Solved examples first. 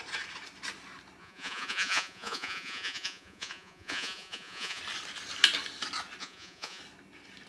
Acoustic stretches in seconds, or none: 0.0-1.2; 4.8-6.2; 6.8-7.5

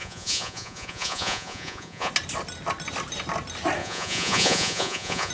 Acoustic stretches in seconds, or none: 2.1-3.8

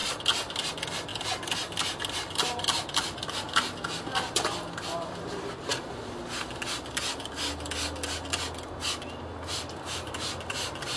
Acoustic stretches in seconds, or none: 0.0-11.0

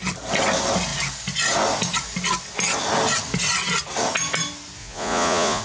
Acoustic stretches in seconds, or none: 0.0-4.8

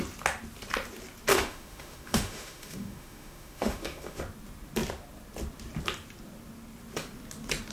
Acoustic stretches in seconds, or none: 0.0-1.3; 4.2-7.7

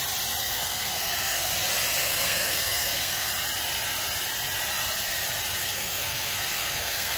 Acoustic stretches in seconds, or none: 0.0-0.4; 1.5-2.0; 3.3-5.6